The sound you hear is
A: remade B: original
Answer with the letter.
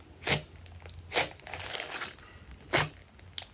B